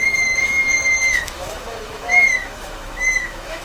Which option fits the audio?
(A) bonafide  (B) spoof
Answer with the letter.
B